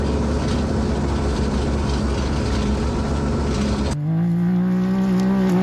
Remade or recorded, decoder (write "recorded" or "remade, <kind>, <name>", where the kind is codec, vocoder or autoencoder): recorded